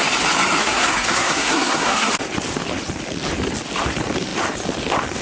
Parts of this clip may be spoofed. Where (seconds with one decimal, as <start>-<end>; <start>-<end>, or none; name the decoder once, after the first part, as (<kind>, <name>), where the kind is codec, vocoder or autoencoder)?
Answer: 0.6-2.1 (codec, SNAC)